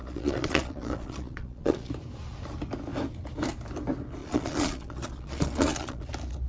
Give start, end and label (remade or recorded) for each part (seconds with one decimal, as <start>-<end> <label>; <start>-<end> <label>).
0.0-1.9 remade; 1.9-4.2 recorded; 4.2-6.1 remade; 6.1-6.5 recorded